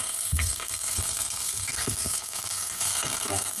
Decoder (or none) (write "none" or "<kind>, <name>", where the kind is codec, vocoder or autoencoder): codec, SNAC